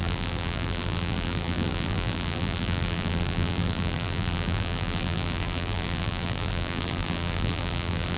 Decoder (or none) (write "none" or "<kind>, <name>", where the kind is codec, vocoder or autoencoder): vocoder, BigVGAN v2